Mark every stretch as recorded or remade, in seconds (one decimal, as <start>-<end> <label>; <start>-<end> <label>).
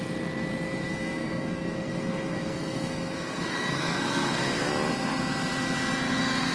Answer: 0.0-0.8 recorded; 0.8-4.7 remade; 4.7-6.5 recorded